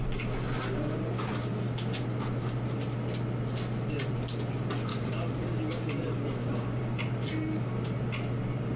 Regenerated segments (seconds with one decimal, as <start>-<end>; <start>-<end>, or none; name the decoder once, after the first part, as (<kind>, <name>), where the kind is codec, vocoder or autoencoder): 4.9-6.8 (codec, DAC)